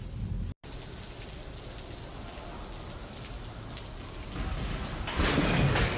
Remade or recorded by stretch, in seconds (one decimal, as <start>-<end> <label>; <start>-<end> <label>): 0.0-6.0 recorded